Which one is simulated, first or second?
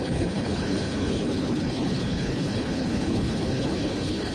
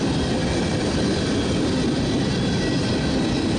first